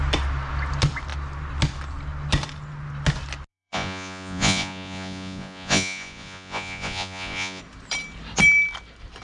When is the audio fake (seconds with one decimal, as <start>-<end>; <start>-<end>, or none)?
3.5-7.6